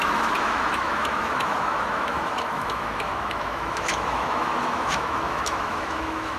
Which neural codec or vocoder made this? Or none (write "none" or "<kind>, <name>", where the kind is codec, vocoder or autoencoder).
autoencoder, DAC-VAE